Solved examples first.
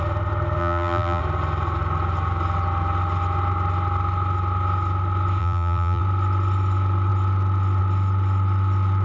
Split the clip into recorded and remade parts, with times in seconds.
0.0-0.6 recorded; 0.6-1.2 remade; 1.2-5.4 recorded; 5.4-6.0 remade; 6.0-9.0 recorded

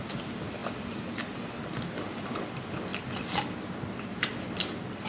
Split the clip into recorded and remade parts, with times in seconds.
0.0-5.1 recorded